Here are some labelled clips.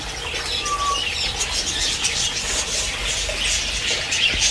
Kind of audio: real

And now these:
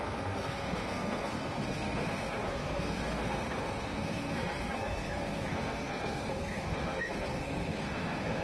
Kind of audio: fake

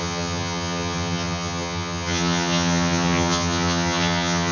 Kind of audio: fake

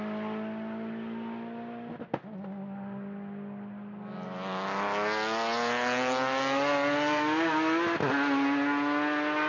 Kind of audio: real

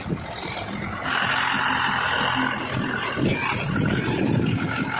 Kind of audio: real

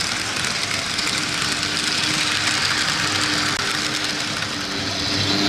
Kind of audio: real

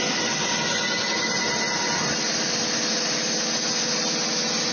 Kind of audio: real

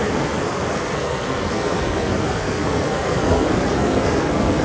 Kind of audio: fake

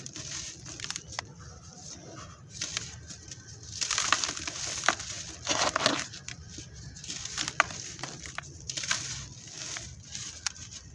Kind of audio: real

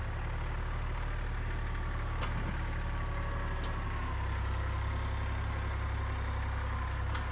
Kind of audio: real